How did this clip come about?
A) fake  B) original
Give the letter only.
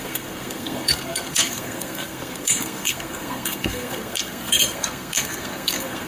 A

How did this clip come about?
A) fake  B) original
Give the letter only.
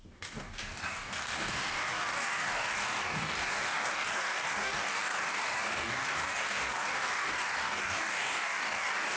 A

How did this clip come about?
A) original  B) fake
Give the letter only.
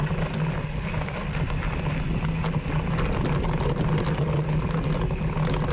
A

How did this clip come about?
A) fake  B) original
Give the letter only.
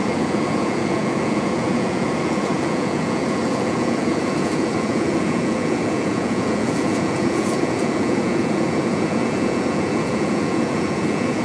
A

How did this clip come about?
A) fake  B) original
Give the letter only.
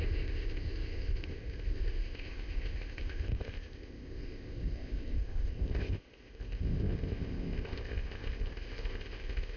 A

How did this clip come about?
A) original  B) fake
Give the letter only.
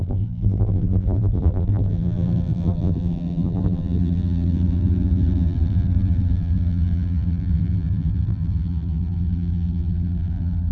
B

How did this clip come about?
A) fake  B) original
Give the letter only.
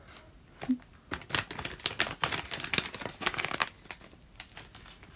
B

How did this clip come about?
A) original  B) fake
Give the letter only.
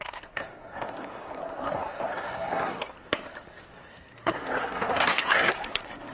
B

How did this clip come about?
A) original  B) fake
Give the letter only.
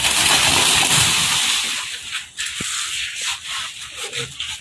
A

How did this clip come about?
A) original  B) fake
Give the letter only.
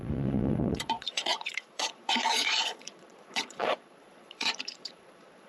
B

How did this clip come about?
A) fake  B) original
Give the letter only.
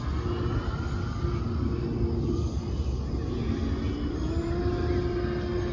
B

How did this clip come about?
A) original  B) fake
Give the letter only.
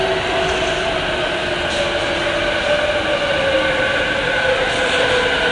A